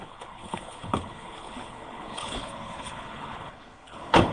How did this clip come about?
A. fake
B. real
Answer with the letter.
A